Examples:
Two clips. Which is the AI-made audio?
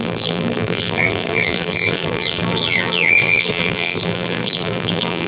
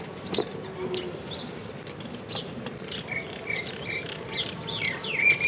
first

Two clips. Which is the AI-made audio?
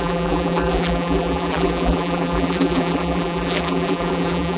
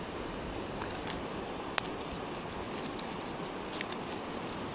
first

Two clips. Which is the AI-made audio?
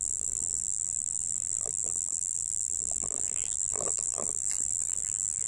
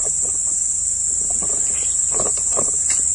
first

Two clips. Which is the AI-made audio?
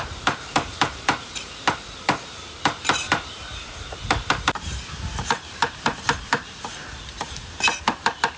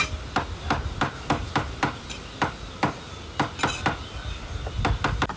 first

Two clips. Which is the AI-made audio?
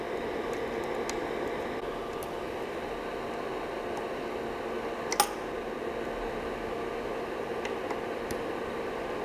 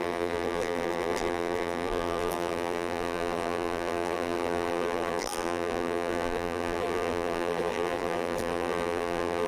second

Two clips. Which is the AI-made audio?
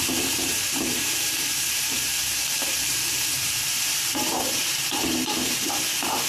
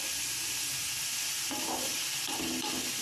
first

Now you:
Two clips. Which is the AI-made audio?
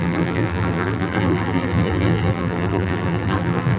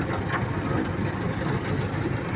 first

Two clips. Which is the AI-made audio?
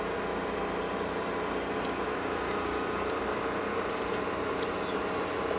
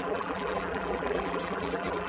second